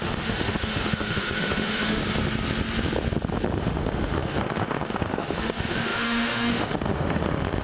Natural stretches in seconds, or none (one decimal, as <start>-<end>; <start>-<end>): 2.0-3.6